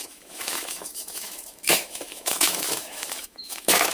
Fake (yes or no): yes